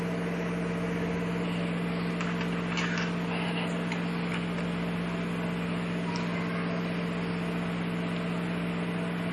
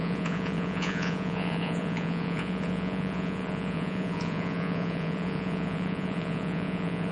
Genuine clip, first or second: first